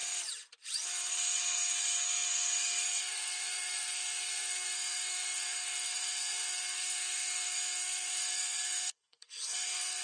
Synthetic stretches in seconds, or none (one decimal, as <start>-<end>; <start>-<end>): 1.1-10.0